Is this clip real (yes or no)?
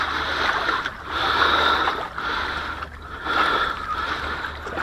yes